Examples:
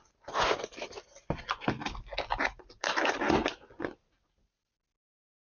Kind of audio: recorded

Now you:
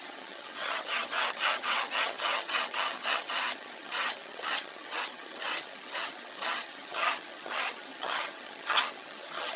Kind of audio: remade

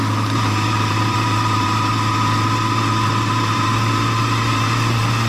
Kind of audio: remade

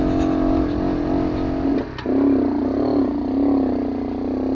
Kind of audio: recorded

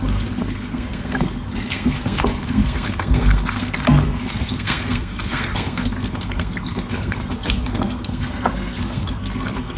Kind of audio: remade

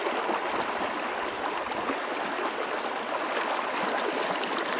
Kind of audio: recorded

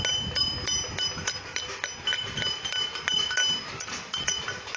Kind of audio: recorded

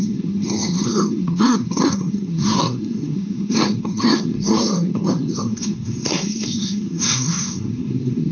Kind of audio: remade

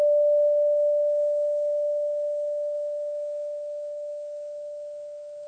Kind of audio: remade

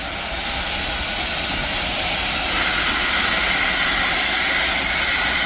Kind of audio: recorded